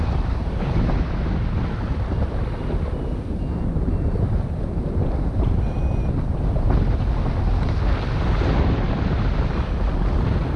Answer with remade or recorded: recorded